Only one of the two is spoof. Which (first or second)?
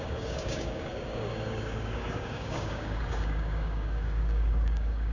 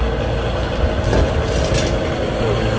first